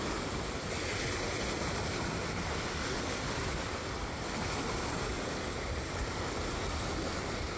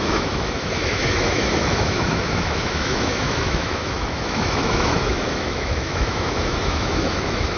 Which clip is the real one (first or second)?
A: first